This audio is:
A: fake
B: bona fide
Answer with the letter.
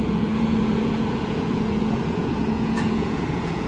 A